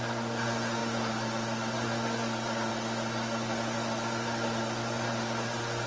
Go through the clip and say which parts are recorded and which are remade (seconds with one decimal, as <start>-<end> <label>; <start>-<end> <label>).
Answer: 0.0-5.9 recorded

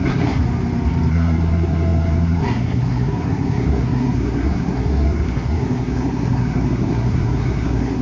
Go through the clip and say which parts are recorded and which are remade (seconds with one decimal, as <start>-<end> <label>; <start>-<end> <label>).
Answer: 0.0-0.4 remade; 0.4-1.1 recorded; 1.1-8.0 remade

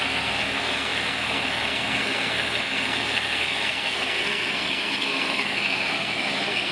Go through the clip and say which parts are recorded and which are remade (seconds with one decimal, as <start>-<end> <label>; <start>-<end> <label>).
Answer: 0.0-6.7 remade

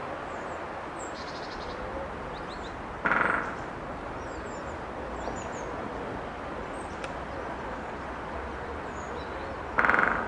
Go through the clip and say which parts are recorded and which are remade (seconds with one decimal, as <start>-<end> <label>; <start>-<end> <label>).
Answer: 0.0-10.3 recorded

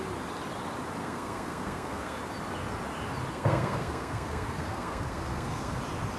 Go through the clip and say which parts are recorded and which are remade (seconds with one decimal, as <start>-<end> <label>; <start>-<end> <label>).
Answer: 0.0-1.0 recorded; 1.0-2.2 remade; 2.2-3.3 recorded; 3.3-5.8 remade; 5.8-6.2 recorded

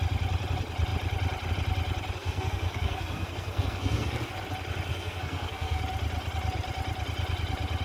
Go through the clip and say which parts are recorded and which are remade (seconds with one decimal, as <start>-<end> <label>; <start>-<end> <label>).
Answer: 0.0-2.2 recorded; 2.2-4.3 remade; 4.3-4.9 recorded; 4.9-5.8 remade; 5.8-7.8 recorded

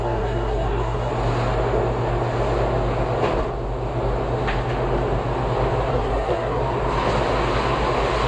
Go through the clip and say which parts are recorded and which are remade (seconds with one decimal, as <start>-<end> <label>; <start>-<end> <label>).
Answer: 0.0-1.1 remade; 1.1-5.9 recorded; 5.9-6.6 remade; 6.6-8.3 recorded

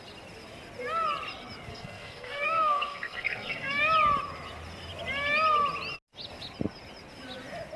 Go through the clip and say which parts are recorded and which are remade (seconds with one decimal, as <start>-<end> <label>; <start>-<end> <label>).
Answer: 0.0-1.7 recorded; 1.7-3.8 remade; 3.8-7.8 recorded